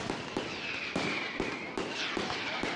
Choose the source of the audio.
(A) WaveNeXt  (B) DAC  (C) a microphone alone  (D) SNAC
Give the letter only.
C